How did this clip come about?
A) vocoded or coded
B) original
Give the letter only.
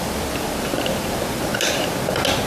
B